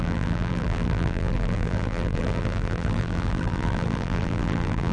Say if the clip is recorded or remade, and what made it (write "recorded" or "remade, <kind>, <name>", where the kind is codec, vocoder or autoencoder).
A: remade, vocoder, BigVGAN v2